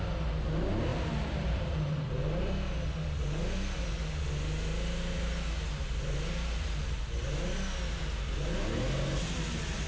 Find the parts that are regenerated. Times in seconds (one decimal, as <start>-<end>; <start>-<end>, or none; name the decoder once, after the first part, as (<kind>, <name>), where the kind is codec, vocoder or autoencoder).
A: 0.9-2.3 (vocoder, BigVGAN v2)